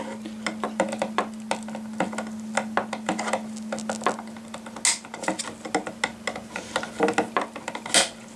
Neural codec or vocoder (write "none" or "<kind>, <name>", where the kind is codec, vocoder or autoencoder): none